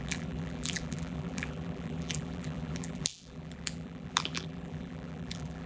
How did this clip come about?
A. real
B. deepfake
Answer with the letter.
B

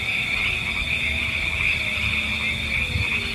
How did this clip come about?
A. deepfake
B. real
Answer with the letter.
B